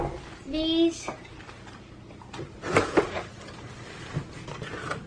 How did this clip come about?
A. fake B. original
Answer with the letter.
B